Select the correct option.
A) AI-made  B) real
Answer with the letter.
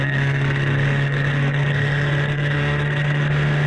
A